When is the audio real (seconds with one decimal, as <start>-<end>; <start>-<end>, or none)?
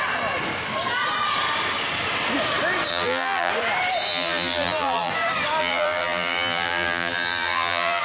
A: 0.0-2.9; 3.5-4.1; 5.1-5.6